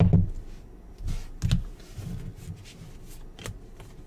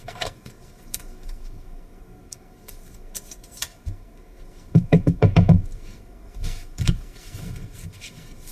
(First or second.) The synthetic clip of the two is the second